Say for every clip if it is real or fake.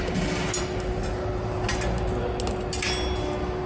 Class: real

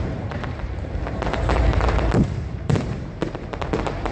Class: fake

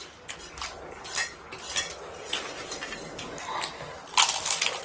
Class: real